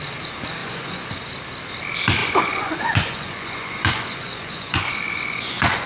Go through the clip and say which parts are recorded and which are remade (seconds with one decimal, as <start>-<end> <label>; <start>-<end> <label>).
0.0-0.6 recorded; 0.6-1.1 remade; 1.1-2.2 recorded; 2.2-5.9 remade